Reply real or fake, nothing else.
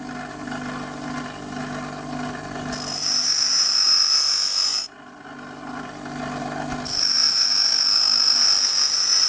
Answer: real